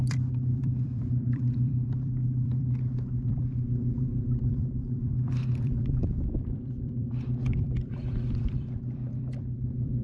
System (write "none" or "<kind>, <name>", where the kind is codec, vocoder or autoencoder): vocoder, BigVGAN v2